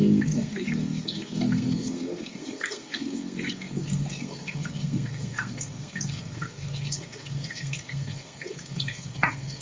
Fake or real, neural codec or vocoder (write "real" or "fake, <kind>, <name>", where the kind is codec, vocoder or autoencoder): fake, codec, SNAC